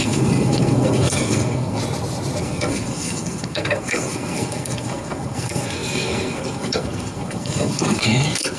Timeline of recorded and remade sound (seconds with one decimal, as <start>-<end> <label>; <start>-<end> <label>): 0.0-1.8 remade; 1.8-2.4 recorded; 2.4-8.6 remade